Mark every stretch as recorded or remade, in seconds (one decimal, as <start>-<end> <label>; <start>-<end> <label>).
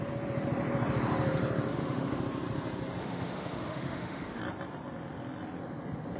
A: 0.0-1.7 recorded; 1.7-2.2 remade; 2.2-3.0 recorded; 3.0-4.4 remade; 4.4-6.2 recorded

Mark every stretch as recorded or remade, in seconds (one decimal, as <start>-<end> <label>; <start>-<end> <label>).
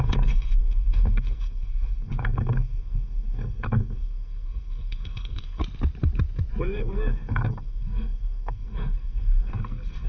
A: 0.0-5.6 remade; 5.6-6.6 recorded; 6.6-10.1 remade